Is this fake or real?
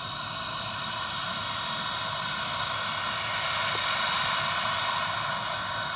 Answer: real